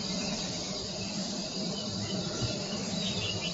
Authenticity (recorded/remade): remade